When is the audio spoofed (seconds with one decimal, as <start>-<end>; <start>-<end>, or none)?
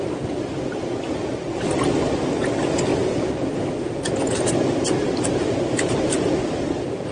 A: none